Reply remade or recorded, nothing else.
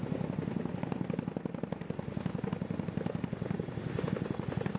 recorded